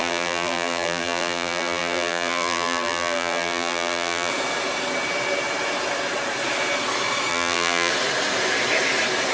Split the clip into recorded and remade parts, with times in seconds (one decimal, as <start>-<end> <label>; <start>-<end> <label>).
0.0-4.3 remade; 4.3-7.3 recorded; 7.3-7.9 remade; 7.9-9.3 recorded